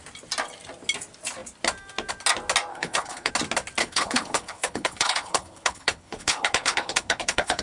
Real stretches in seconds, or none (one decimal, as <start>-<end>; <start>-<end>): 0.0-2.7; 3.3-3.8